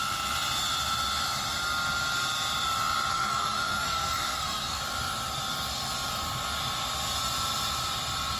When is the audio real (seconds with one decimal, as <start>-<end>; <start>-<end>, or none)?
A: 0.0-3.1; 4.8-8.4